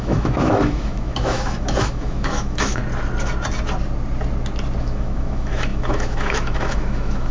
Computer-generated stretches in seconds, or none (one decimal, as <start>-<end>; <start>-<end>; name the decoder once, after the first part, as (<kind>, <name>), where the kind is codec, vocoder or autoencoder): 0.0-2.8 (autoencoder, DAC-VAE); 4.8-7.3